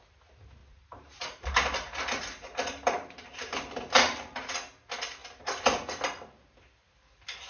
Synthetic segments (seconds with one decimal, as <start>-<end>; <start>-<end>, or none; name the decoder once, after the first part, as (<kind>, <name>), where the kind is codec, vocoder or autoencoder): 0.6-4.5 (vocoder, BigVGAN v2); 5.2-6.0